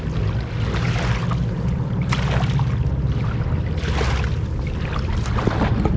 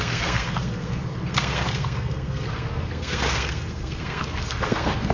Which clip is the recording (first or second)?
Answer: first